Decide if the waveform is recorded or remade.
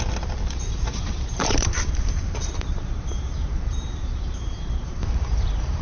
remade